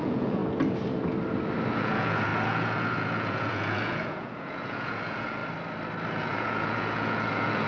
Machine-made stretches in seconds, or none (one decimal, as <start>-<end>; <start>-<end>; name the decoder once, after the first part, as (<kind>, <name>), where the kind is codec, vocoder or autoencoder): 0.0-0.4 (vocoder, Vocos); 1.7-5.4; 6.1-7.7